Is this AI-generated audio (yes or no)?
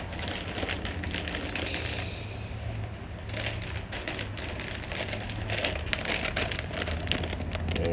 no